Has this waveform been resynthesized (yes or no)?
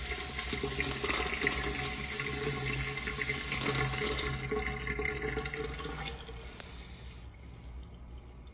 no